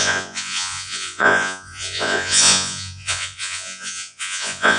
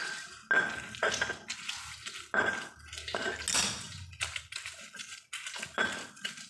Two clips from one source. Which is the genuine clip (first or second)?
second